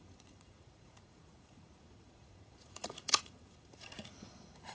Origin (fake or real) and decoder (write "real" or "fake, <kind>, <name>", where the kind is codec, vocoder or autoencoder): fake, vocoder, Vocos